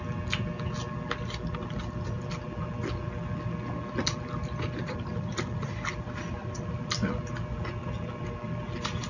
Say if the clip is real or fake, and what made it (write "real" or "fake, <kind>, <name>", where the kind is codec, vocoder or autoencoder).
real